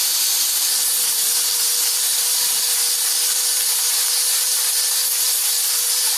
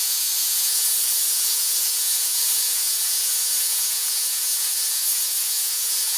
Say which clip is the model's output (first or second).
second